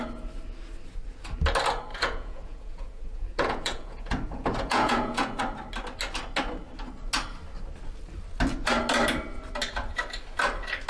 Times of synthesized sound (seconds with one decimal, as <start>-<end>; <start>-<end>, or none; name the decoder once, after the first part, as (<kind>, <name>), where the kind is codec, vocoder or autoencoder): 1.9-5.4 (vocoder, Vocos)